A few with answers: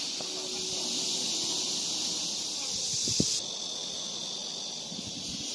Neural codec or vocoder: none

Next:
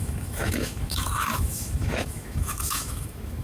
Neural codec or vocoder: autoencoder, DAC-VAE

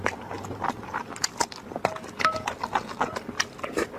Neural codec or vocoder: none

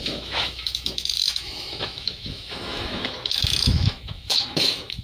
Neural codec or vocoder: autoencoder, DAC-VAE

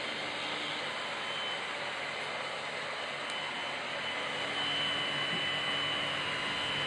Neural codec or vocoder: none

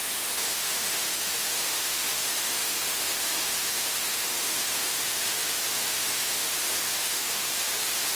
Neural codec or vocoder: autoencoder, DAC-VAE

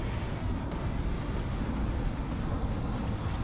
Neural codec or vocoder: none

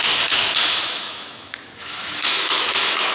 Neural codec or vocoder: autoencoder, DAC-VAE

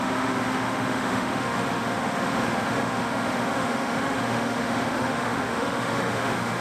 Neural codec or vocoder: autoencoder, DAC-VAE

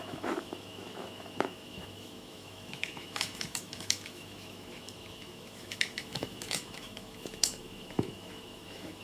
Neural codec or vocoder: autoencoder, DAC-VAE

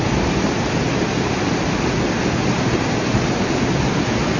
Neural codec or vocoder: none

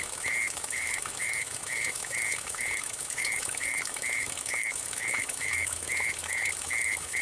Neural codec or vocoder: autoencoder, DAC-VAE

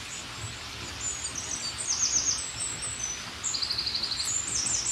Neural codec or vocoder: none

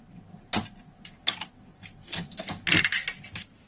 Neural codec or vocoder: none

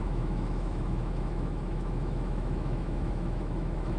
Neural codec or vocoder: autoencoder, DAC-VAE